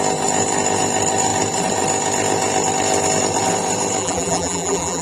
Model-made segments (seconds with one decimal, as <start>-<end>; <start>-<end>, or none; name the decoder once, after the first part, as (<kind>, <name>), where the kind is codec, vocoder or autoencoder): 4.0-5.0 (vocoder, BigVGAN v2)